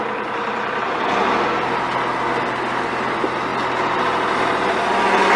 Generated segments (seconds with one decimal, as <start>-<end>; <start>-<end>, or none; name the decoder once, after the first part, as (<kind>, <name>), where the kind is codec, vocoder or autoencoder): none